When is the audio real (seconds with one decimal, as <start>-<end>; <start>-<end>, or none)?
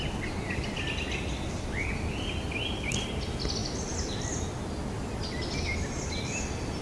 0.0-6.8